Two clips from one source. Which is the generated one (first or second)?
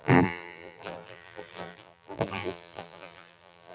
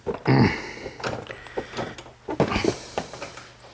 first